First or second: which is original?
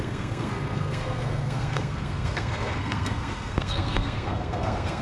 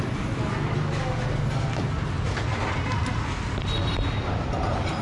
second